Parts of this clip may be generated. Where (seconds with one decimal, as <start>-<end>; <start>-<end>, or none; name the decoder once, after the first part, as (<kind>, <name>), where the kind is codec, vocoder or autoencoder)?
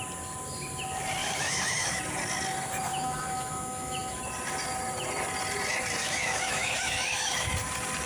1.2-2.0 (autoencoder, DAC-VAE); 2.9-4.2; 6.0-7.5